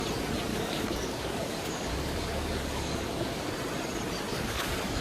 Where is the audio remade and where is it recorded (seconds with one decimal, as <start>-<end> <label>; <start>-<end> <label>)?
0.0-0.5 recorded; 0.5-3.5 remade; 3.5-4.3 recorded; 4.3-5.0 remade